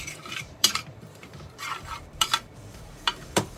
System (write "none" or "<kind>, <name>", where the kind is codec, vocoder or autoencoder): vocoder, BigVGAN v2